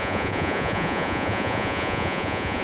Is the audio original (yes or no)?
no